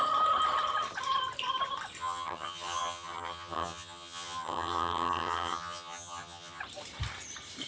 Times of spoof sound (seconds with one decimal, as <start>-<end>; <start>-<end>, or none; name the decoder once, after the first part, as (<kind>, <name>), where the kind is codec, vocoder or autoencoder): 2.0-6.6 (vocoder, HiFi-GAN)